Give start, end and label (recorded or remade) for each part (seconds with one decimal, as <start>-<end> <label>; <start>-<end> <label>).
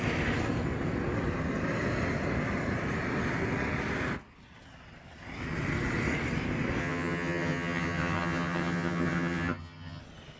0.0-6.8 recorded; 6.8-10.0 remade; 10.0-10.4 recorded